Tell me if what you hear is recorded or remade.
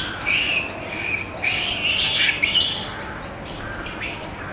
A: recorded